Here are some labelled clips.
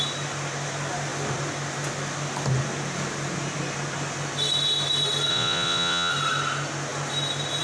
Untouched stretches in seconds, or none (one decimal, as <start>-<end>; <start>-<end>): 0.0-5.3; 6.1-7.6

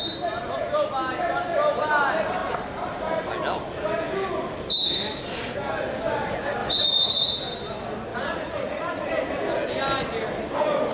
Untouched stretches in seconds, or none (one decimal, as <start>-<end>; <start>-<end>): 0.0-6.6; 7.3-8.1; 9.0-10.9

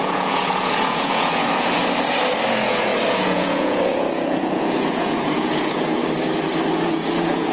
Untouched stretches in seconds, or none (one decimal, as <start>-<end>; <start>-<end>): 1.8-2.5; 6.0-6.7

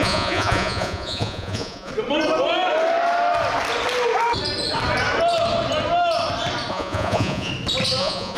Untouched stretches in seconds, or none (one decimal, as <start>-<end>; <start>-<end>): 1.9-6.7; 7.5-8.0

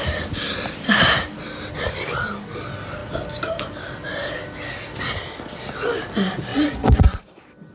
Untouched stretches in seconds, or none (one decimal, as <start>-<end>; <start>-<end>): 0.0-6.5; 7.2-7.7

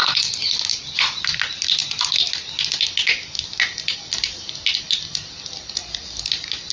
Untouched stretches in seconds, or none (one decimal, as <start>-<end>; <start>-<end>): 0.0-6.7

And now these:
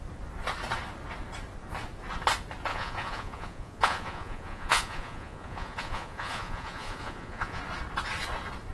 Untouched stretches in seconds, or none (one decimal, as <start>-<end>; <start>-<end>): 0.0-2.7; 7.6-8.7

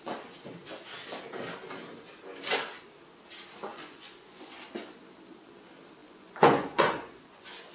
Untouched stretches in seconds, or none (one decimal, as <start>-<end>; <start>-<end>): 0.0-3.7; 4.6-6.0